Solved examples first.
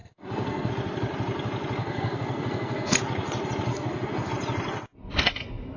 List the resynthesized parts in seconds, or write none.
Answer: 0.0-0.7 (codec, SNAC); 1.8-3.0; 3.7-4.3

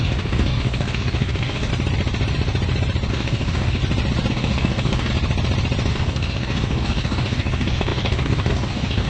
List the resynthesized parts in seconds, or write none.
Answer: 0.0-1.7 (codec, DAC); 3.1-3.8; 4.3-5.1; 5.9-9.1

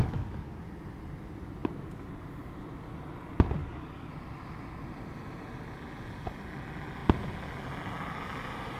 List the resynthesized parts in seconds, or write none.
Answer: 0.0-0.6 (codec, DAC); 3.6-4.1

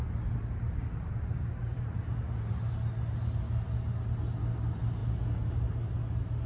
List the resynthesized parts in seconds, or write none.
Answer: none

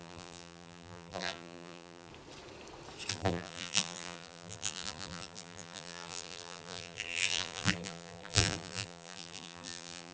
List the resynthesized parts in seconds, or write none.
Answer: 0.0-2.1 (vocoder, BigVGAN v2); 3.1-10.1